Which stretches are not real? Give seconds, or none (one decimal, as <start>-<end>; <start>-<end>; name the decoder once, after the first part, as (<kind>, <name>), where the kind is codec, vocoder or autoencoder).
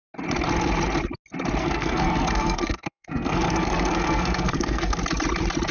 1.6-5.0 (codec, SNAC)